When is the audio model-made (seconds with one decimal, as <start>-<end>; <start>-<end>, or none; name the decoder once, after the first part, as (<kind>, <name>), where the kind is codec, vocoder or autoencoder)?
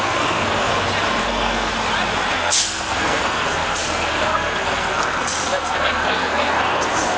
0.0-0.7 (codec, SNAC); 1.2-1.7; 2.3-7.2